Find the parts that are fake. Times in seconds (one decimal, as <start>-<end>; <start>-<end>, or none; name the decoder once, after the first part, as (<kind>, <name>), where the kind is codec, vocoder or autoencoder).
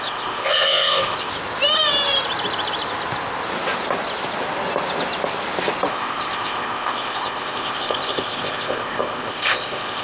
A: 0.0-1.3 (codec, ZipCodec); 5.9-10.0